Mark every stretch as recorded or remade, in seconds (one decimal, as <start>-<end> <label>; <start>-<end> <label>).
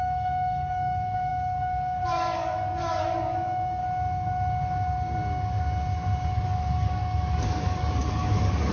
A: 0.0-3.8 remade; 3.8-6.3 recorded; 6.3-8.7 remade